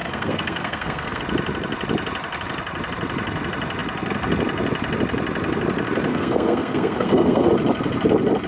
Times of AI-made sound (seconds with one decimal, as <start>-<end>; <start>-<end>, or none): 0.0-1.2; 6.1-7.5